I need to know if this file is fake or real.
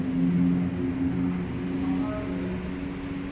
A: real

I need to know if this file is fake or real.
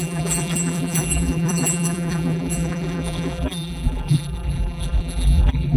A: fake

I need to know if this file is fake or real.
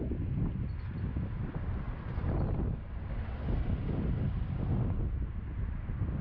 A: real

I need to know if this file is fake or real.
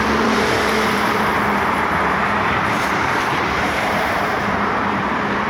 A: fake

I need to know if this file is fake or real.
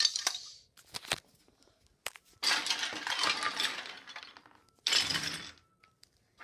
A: real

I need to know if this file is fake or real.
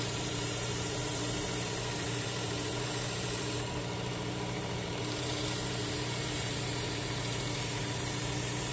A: fake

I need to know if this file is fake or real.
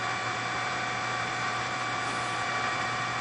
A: fake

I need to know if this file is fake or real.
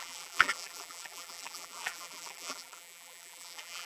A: fake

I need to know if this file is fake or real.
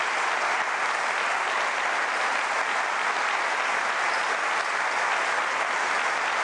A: real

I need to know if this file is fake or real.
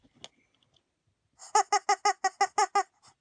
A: real